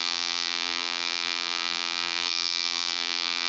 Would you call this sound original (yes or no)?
no